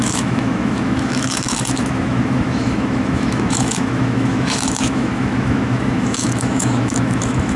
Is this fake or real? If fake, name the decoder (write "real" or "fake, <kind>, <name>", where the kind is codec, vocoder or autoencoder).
fake, autoencoder, DAC-VAE